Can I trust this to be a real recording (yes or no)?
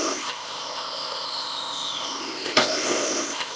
no